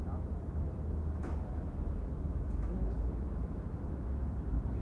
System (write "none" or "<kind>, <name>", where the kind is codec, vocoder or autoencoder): autoencoder, DAC-VAE